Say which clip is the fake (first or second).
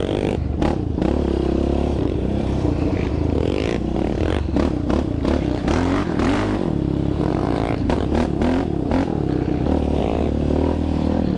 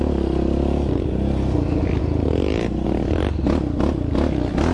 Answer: first